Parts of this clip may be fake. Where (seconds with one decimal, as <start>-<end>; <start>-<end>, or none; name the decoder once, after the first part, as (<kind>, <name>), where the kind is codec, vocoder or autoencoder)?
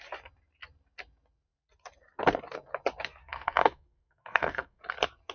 3.2-4.8 (codec, SNAC)